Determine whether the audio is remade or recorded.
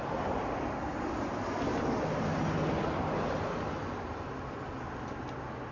recorded